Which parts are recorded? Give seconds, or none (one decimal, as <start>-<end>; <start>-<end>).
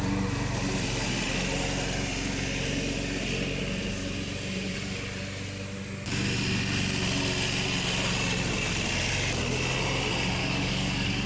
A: 0.0-10.4